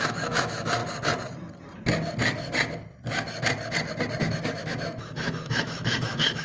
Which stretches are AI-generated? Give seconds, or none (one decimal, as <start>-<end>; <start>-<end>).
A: 0.0-0.8; 4.2-6.4